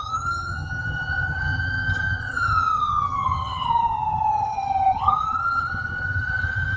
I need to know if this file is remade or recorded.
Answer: remade